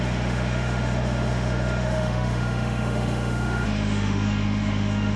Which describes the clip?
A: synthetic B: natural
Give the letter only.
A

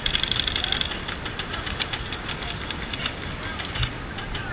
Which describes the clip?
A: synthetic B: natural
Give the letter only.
B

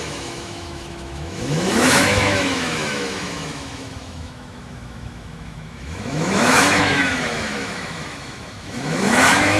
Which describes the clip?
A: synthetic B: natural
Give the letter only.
A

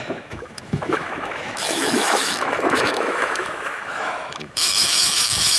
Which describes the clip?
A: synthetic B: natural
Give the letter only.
A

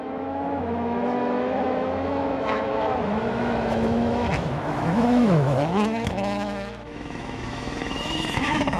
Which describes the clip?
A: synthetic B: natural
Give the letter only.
A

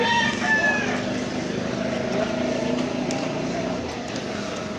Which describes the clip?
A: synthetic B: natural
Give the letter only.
B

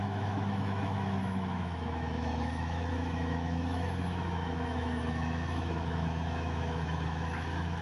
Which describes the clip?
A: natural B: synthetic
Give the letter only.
B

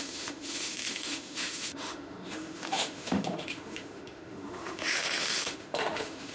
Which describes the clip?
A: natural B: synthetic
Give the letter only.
B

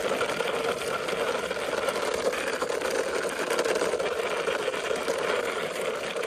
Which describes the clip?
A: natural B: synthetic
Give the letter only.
A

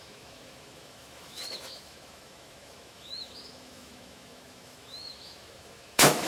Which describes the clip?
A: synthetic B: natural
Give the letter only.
A